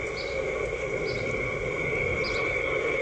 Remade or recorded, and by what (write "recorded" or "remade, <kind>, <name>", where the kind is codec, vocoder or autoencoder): recorded